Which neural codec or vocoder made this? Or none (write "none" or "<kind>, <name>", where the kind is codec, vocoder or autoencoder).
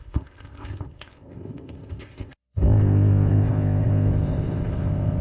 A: codec, ZipCodec